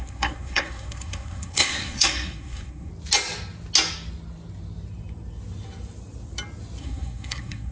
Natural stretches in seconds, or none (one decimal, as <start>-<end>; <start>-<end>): 2.9-6.8